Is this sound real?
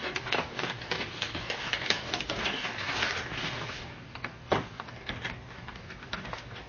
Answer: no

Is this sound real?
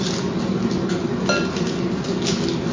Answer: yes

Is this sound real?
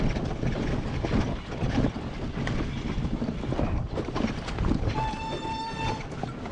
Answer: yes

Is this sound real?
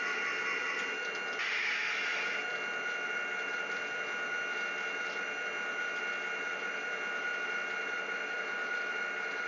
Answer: yes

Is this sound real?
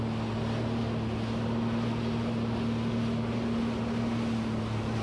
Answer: yes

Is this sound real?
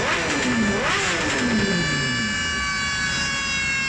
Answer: yes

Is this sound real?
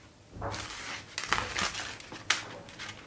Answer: yes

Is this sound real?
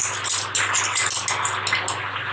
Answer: yes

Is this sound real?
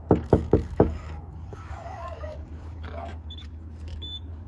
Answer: no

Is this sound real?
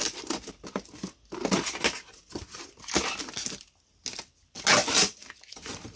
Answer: yes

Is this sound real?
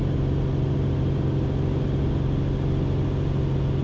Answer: yes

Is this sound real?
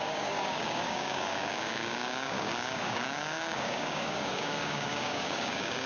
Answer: no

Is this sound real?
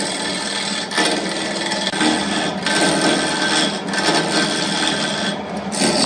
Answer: yes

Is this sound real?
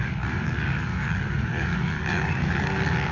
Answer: no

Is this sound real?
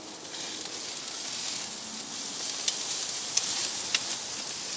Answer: yes